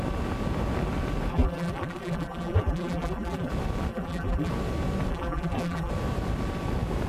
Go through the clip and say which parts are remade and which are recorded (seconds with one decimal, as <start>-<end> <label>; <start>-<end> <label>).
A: 0.0-1.3 recorded; 1.3-3.5 remade; 3.5-3.9 recorded; 3.9-4.5 remade; 4.5-5.1 recorded; 5.1-5.9 remade; 5.9-7.1 recorded